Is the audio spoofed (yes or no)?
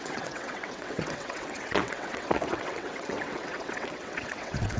yes